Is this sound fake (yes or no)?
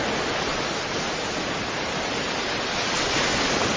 no